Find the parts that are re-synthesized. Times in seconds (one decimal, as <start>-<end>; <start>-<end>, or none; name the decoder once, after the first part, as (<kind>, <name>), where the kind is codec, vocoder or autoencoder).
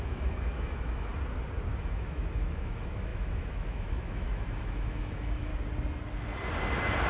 0.0-1.1 (autoencoder, DAC-VAE); 1.8-5.5